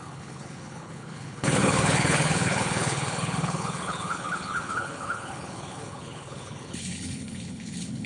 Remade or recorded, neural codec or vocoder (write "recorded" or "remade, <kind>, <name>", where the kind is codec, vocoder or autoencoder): remade, codec, HILCodec